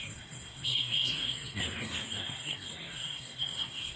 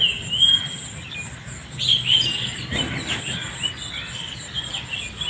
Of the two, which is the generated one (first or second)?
first